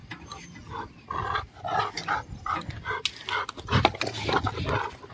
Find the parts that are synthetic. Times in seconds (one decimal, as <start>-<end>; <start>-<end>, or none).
0.0-1.0; 3.2-3.8